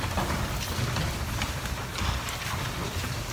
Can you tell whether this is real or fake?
real